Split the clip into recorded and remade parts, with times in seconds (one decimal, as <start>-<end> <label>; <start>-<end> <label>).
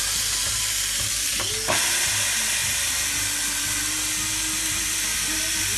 0.0-5.8 recorded